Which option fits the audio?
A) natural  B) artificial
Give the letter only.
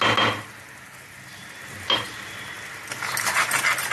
A